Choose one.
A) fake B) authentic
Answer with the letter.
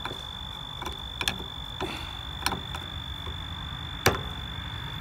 B